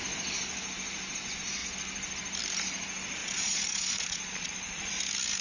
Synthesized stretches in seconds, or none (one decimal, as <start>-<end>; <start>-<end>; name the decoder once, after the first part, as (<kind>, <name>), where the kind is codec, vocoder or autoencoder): 3.2-4.9 (vocoder, Vocos)